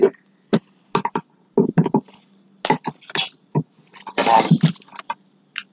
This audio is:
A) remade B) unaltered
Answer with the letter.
B